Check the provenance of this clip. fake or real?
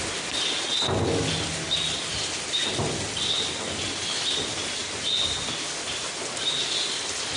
real